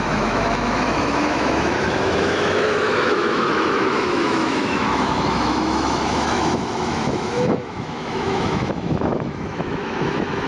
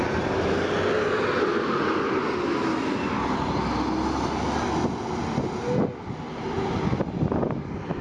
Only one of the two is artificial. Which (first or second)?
first